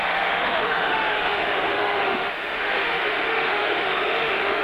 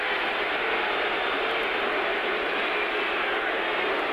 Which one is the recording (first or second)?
second